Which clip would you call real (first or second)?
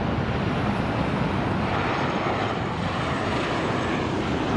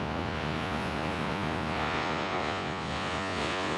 first